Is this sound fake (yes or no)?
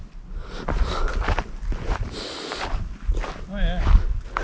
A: no